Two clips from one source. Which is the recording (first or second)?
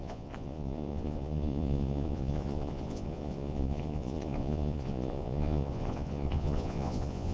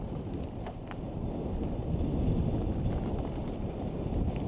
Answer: second